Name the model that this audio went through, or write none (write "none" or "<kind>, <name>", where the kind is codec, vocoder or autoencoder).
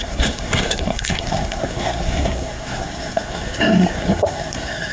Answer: codec, SNAC